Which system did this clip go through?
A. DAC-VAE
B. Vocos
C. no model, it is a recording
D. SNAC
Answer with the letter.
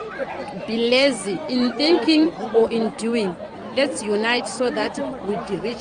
B